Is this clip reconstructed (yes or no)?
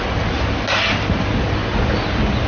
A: no